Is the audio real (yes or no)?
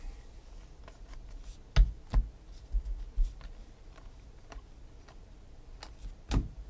yes